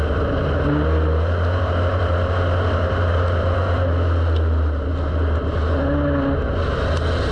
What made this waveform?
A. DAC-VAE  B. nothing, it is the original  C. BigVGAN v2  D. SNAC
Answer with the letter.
B